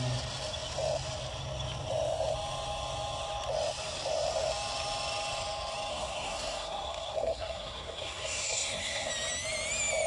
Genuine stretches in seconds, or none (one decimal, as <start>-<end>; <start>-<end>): 0.0-5.9; 9.1-10.1